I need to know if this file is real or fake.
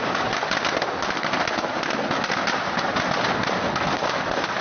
real